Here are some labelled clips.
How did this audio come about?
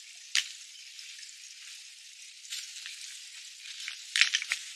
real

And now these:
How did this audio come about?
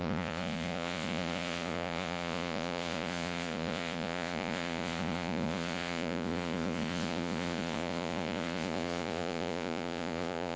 fake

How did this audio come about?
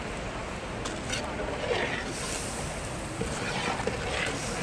real